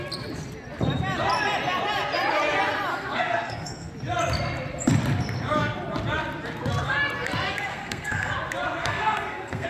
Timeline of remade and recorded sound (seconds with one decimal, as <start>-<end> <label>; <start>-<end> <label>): 0.0-2.9 recorded; 2.9-3.9 remade; 3.9-7.7 recorded; 7.7-8.3 remade; 8.3-8.8 recorded; 8.8-9.7 remade